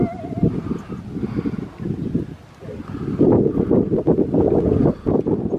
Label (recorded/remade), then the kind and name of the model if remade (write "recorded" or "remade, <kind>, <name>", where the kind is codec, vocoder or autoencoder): recorded